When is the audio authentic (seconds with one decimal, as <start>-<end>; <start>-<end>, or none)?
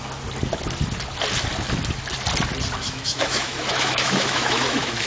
0.0-2.8